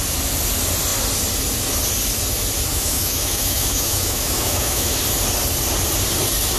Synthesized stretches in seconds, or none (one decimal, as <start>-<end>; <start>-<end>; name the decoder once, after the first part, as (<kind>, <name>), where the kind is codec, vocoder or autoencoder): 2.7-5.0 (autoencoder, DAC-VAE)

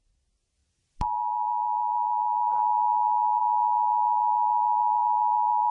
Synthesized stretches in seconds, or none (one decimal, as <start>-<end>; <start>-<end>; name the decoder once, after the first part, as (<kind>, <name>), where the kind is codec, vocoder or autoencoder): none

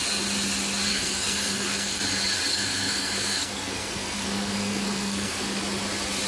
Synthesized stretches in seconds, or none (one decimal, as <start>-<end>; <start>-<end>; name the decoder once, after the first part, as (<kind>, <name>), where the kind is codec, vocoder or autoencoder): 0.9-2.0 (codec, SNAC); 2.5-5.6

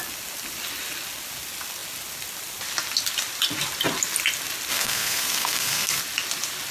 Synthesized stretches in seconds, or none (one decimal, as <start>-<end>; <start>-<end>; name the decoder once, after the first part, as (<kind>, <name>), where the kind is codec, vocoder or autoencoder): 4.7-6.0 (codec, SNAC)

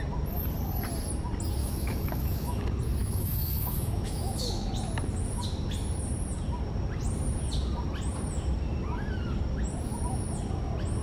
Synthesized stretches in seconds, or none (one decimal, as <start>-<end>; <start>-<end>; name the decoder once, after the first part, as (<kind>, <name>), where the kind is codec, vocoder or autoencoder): 1.6-2.6 (autoencoder, DAC-VAE); 3.0-4.7

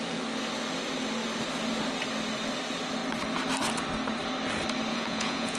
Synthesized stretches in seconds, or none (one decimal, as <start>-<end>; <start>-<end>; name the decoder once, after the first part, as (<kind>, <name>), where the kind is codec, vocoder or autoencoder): 4.9-5.6 (vocoder, Vocos)

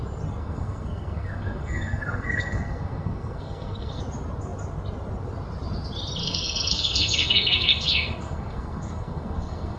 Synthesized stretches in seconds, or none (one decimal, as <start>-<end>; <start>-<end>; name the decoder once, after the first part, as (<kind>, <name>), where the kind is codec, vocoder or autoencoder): 0.4-4.0 (codec, SNAC); 6.2-9.8

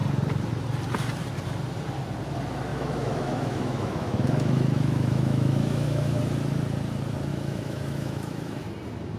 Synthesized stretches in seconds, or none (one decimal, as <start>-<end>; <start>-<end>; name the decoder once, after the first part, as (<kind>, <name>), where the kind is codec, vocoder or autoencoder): 2.7-6.2 (autoencoder, DAC-VAE); 7.3-8.7